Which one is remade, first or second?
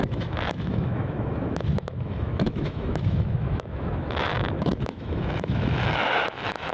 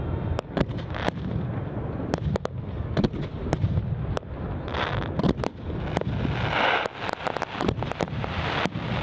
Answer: first